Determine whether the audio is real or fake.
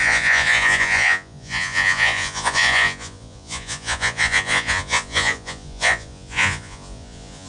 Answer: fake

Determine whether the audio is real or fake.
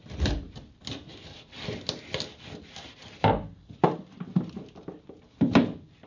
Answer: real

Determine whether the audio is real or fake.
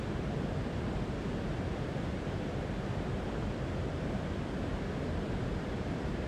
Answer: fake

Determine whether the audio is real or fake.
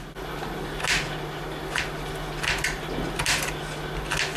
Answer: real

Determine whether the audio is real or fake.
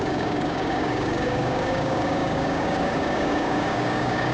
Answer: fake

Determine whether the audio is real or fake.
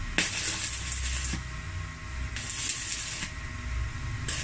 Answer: real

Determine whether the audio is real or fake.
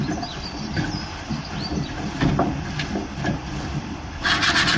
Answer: real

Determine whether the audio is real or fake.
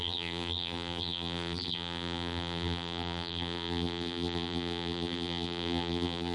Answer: fake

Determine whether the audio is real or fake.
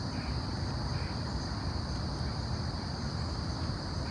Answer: real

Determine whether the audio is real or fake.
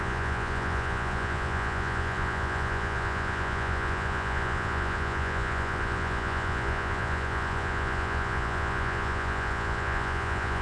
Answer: fake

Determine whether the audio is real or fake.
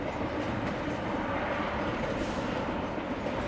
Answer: real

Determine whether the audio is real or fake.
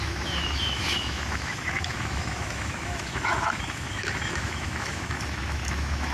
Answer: fake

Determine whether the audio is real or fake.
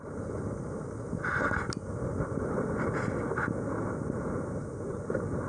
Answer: real